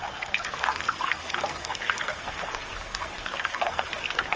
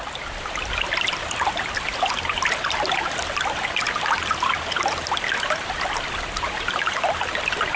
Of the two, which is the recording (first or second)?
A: second